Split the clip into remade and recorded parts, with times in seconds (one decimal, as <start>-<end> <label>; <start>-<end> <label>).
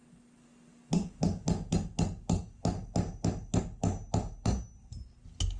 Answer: 0.0-5.6 recorded